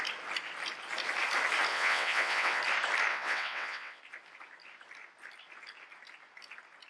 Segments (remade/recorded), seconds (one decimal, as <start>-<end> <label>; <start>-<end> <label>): 0.0-1.7 recorded; 1.7-2.6 remade; 2.6-3.1 recorded; 3.1-4.0 remade; 4.0-6.9 recorded